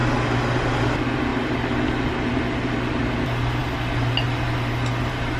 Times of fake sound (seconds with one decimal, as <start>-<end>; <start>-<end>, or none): none